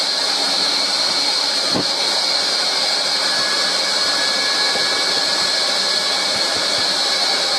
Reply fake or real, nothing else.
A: fake